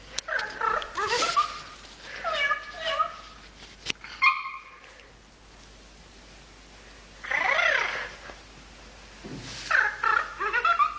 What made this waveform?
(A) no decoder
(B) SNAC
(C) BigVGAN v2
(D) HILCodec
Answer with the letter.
A